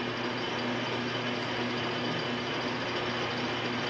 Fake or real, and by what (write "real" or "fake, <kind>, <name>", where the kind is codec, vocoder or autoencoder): real